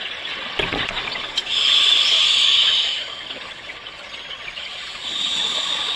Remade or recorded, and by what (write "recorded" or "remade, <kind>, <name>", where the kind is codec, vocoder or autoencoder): remade, vocoder, Vocos